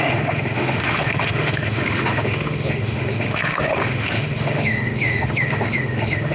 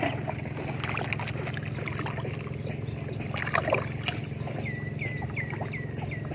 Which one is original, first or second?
second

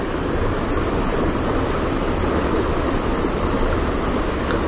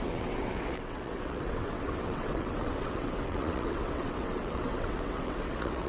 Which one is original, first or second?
first